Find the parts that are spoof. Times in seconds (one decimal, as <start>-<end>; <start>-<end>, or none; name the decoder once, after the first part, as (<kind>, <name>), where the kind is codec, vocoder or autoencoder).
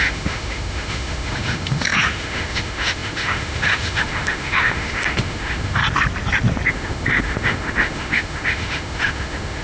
0.0-5.8 (autoencoder, DAC-VAE); 6.7-9.6